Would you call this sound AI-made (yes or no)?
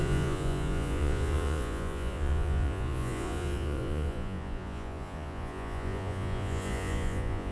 yes